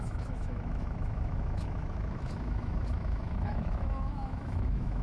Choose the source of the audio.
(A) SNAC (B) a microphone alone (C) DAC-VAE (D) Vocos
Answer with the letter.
C